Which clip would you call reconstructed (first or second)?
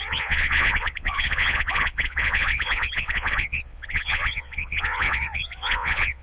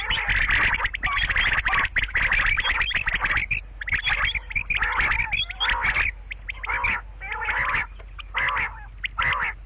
first